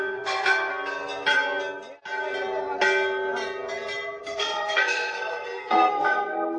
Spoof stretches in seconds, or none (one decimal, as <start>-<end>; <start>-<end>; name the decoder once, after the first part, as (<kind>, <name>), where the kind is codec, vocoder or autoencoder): 0.0-0.7 (codec, SNAC); 4.2-6.6